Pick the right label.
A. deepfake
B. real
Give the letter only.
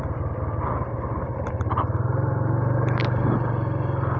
B